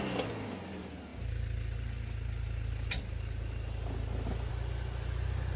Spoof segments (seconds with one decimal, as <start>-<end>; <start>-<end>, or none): none